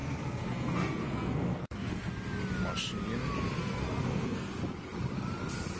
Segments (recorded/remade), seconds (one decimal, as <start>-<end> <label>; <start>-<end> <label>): 0.0-2.1 remade; 2.1-3.6 recorded; 3.6-4.5 remade; 4.5-5.8 recorded